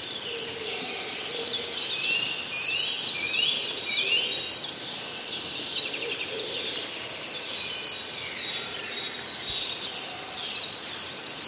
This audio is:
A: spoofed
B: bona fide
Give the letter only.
B